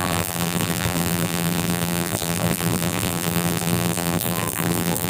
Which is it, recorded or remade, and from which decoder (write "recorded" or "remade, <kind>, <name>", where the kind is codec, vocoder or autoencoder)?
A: remade, vocoder, BigVGAN v2